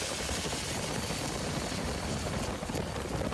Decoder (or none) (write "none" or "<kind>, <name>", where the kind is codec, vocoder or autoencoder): none